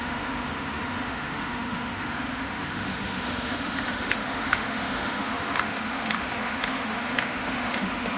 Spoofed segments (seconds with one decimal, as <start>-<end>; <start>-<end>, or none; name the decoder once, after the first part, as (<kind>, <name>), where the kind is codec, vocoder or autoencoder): 0.0-8.2 (autoencoder, DAC-VAE)